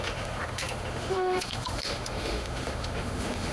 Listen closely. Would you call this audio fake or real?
fake